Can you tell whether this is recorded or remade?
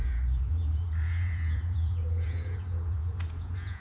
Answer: remade